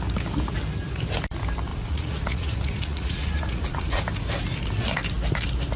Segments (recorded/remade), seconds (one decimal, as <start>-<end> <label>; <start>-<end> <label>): 0.0-1.7 recorded; 1.7-4.0 remade; 4.0-5.8 recorded